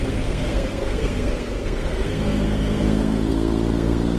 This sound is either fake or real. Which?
fake